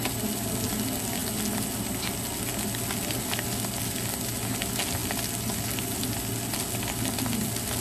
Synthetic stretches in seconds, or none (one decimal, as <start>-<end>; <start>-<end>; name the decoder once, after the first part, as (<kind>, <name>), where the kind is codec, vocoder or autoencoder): none